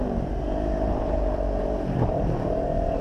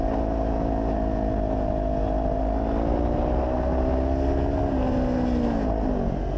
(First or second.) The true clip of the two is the second